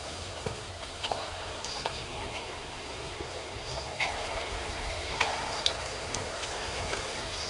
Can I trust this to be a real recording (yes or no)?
no